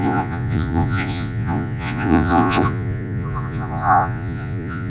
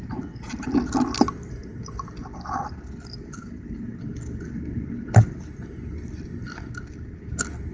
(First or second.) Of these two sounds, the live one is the second